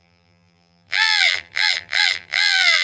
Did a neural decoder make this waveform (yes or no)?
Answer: yes